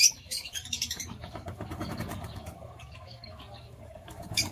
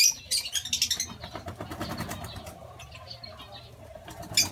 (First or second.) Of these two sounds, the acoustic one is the second